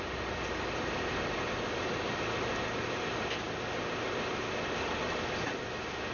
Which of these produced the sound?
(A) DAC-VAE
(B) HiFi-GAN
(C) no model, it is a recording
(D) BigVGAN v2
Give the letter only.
C